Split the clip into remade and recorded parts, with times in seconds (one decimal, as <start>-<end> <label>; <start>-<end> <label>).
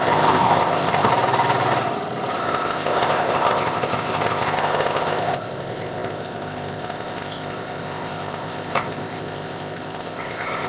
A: 0.0-1.1 remade; 1.1-2.4 recorded; 2.4-10.7 remade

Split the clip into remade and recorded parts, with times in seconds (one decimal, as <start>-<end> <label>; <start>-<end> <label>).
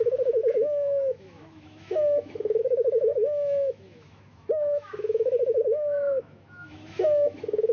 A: 0.0-7.7 remade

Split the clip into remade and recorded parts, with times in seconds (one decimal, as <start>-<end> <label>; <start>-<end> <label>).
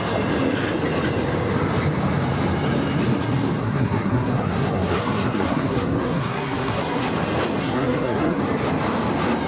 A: 0.0-3.6 recorded; 3.6-7.1 remade; 7.1-7.6 recorded; 7.6-8.4 remade; 8.4-9.5 recorded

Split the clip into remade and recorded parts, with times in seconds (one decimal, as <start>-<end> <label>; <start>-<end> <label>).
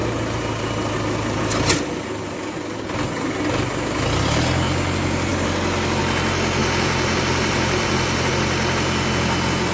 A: 0.0-0.6 remade; 0.6-6.6 recorded; 6.6-8.3 remade; 8.3-9.7 recorded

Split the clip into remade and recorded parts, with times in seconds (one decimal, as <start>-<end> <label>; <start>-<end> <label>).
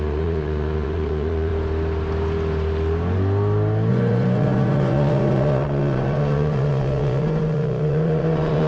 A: 0.0-1.5 remade; 1.5-3.9 recorded; 3.9-8.7 remade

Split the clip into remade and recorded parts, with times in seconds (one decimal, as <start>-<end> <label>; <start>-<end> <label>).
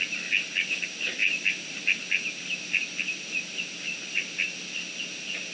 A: 0.0-1.2 recorded; 1.2-1.8 remade; 1.8-5.5 recorded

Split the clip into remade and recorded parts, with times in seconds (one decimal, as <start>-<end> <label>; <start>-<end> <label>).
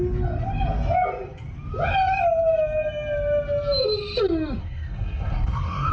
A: 0.0-4.6 recorded; 4.6-5.9 remade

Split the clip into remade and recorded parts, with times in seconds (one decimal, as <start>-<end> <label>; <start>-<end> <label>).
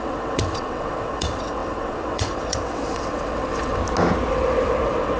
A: 0.0-3.8 remade; 3.8-4.3 recorded; 4.3-5.2 remade